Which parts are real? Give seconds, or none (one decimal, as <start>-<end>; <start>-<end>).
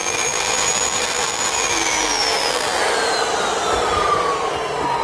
2.8-5.0